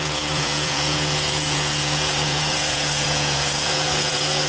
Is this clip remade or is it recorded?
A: remade